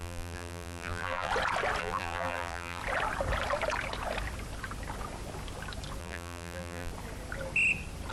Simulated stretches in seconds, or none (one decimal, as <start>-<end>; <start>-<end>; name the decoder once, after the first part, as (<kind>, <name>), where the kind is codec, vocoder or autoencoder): 0.0-1.3 (vocoder, BigVGAN v2); 1.8-2.8; 6.0-6.9